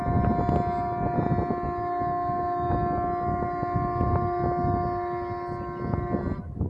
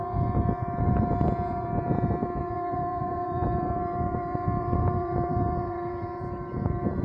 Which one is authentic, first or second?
first